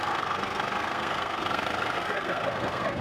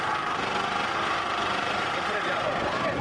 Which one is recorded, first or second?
second